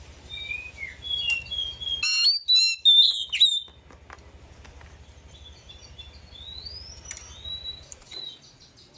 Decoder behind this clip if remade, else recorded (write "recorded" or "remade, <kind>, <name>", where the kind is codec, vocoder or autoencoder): recorded